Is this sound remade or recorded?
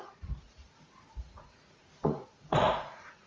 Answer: remade